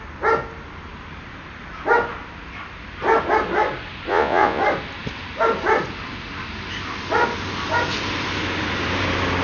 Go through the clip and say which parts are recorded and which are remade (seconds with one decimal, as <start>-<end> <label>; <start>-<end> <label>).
0.0-4.1 recorded; 4.1-4.6 remade; 4.6-9.4 recorded